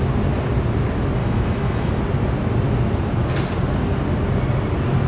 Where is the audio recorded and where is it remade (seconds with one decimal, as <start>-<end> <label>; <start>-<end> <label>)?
0.0-1.2 recorded; 1.2-1.9 remade; 1.9-5.1 recorded